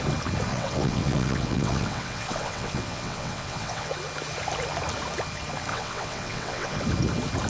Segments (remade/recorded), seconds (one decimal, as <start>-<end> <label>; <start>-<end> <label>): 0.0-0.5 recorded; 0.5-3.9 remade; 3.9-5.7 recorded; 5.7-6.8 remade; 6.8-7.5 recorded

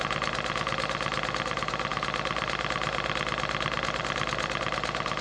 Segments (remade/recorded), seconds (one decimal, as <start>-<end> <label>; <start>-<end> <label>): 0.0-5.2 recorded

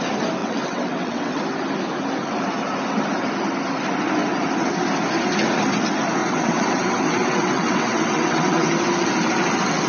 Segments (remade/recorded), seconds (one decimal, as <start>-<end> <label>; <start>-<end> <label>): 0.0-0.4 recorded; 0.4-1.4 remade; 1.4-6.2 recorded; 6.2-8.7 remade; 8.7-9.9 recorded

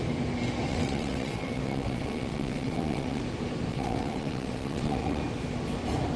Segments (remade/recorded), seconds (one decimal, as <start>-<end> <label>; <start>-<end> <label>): 0.0-0.7 recorded; 0.7-3.2 remade; 3.2-3.7 recorded; 3.7-5.2 remade; 5.2-6.2 recorded

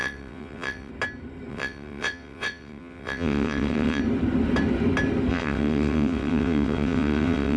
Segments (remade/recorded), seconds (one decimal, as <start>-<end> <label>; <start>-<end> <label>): 0.0-0.9 remade; 0.9-1.5 recorded; 1.5-4.0 remade; 4.0-5.3 recorded; 5.3-7.6 remade